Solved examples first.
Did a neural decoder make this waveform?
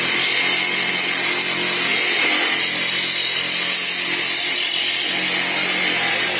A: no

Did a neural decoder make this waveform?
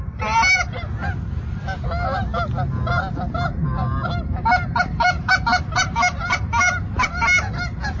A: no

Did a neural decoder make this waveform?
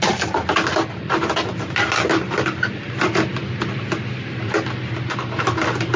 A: no